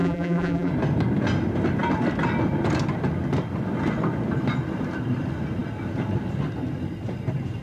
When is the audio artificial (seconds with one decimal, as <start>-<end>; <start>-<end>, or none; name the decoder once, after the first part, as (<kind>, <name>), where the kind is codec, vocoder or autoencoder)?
0.0-0.7 (vocoder, BigVGAN v2)